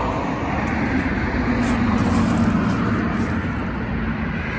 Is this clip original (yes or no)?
yes